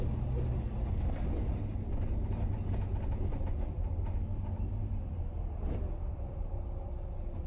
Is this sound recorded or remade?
recorded